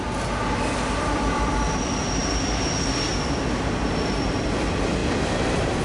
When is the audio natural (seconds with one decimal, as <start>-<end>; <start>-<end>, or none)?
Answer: 0.0-0.4; 1.8-2.2; 3.1-5.8